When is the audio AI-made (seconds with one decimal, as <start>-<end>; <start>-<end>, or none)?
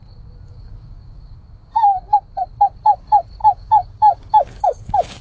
0.5-2.2; 3.4-5.2